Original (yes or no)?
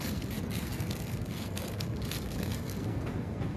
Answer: no